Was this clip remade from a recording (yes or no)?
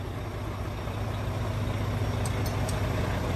no